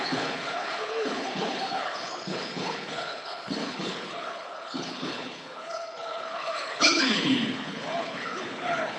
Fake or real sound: fake